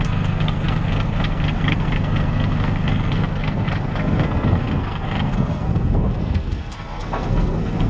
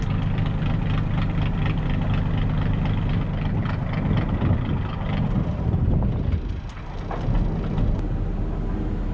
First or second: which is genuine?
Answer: second